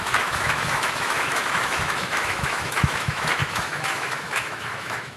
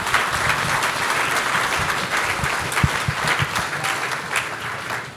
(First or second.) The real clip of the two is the second